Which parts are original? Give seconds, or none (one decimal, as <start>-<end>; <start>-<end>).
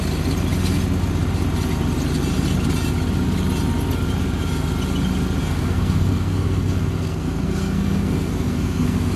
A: 0.0-5.4